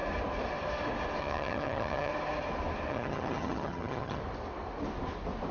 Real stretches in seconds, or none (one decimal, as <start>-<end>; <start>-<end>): 0.0-1.2; 2.1-2.9; 4.2-5.5